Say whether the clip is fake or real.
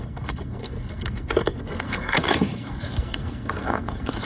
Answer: fake